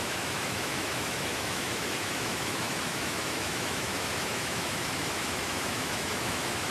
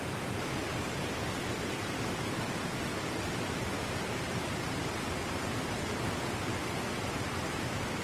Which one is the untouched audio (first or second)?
second